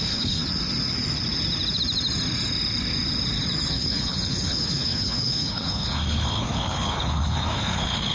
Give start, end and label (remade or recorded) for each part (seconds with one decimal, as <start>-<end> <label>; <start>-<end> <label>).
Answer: 0.0-0.4 remade; 0.4-3.7 recorded; 3.7-8.1 remade